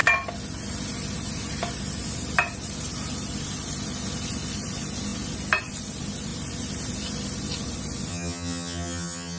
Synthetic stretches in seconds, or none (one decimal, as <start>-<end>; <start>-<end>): 8.1-9.4